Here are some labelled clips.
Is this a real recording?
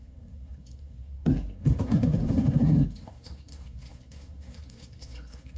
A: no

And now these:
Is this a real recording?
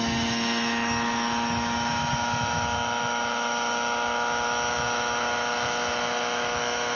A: no